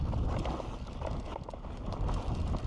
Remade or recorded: recorded